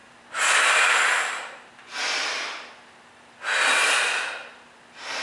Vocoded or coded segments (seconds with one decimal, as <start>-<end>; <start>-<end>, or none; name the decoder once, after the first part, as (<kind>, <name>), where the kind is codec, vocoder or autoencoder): none